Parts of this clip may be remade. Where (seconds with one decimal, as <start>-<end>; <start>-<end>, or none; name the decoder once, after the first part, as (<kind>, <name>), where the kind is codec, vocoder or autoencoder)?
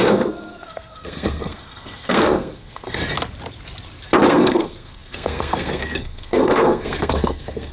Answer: 0.0-3.0 (codec, SNAC); 4.3-7.7